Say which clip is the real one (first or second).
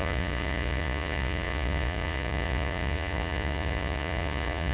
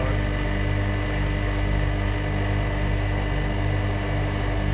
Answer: second